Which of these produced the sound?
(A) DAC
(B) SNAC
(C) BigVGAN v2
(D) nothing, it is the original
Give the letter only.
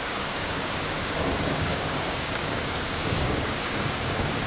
A